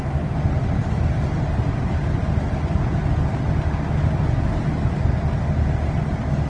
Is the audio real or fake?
real